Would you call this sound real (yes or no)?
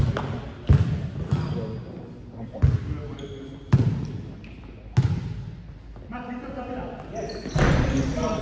yes